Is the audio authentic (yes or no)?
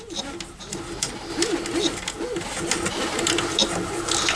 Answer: yes